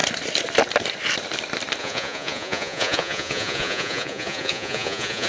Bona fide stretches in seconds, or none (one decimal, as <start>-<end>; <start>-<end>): 0.0-1.8